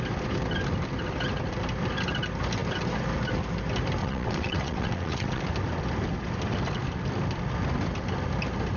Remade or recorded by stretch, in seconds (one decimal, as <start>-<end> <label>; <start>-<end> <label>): 0.0-4.0 recorded; 4.0-5.4 remade; 5.4-8.8 recorded